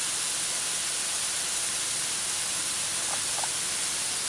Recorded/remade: recorded